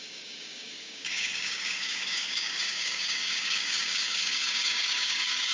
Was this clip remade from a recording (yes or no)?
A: yes